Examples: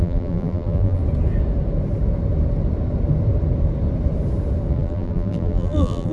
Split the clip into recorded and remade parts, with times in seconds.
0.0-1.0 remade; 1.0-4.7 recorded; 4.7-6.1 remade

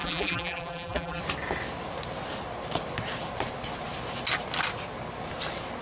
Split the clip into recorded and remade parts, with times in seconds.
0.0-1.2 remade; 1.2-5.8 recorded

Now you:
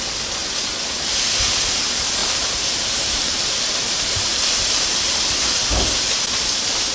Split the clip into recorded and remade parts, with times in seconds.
0.0-2.2 recorded; 2.2-3.4 remade; 3.4-3.8 recorded; 3.8-5.2 remade; 5.2-6.9 recorded

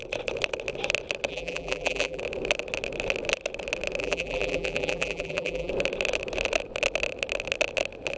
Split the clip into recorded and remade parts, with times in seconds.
0.0-1.3 recorded; 1.3-2.2 remade; 2.2-4.0 recorded; 4.0-5.7 remade; 5.7-8.2 recorded

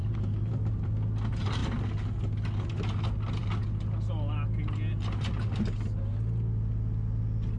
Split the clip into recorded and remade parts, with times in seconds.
0.0-0.9 remade; 0.9-7.6 recorded